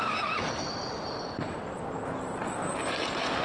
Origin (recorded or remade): recorded